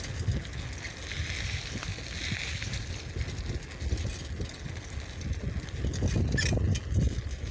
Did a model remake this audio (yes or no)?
no